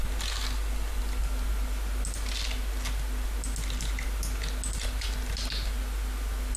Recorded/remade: recorded